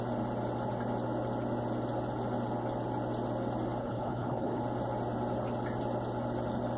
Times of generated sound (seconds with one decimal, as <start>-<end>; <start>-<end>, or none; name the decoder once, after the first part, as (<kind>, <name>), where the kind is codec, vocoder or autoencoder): 3.8-4.6 (codec, HILCodec)